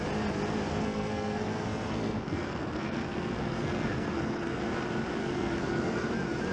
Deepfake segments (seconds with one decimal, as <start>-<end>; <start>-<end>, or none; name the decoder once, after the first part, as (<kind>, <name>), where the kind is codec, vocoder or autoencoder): 0.7-4.6 (codec, SNAC); 5.2-6.1